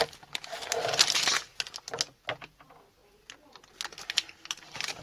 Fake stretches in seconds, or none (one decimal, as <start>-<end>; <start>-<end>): none